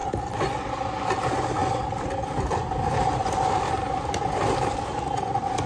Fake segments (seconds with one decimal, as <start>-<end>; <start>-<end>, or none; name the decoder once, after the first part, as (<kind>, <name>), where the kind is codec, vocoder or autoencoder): 1.6-2.1 (vocoder, BigVGAN v2); 3.2-4.0